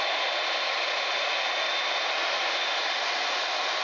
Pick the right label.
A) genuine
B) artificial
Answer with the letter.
A